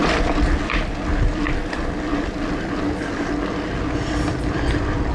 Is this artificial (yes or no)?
no